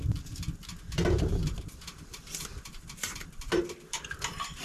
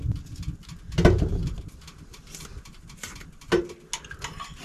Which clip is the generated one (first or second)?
first